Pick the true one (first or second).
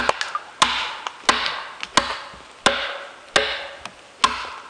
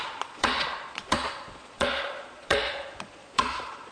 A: first